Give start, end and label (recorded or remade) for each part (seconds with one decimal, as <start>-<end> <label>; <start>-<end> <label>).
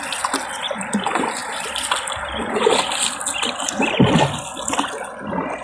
0.0-5.6 recorded